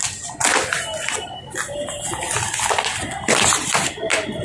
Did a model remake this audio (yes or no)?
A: no